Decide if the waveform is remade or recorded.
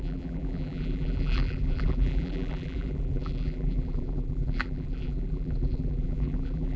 remade